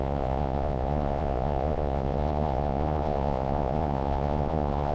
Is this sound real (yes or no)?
no